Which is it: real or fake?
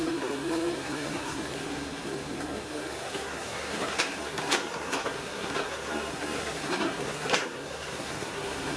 fake